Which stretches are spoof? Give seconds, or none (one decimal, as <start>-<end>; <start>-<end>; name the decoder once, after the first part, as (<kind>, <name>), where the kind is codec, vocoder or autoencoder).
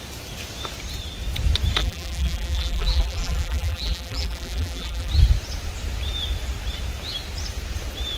1.8-5.1 (vocoder, BigVGAN v2)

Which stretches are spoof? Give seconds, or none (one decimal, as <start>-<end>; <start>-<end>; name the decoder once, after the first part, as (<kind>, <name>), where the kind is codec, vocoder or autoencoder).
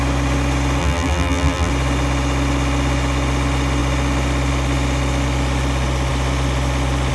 0.8-1.7 (vocoder, BigVGAN v2)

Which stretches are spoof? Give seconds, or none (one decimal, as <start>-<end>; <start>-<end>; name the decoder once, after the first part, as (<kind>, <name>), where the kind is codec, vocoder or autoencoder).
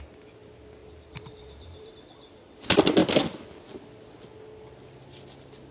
0.8-1.9 (vocoder, BigVGAN v2)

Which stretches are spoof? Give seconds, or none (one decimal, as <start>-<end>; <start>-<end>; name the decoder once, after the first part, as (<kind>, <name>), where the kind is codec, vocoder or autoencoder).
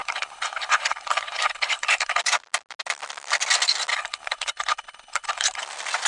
0.0-2.2 (codec, HILCodec); 3.9-5.6